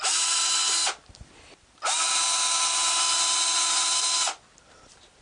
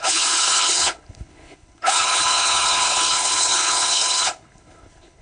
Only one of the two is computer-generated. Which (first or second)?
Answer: second